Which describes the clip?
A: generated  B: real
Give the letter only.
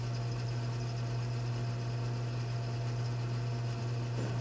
B